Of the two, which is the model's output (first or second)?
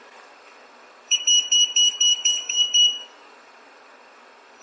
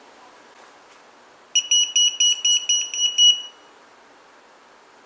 first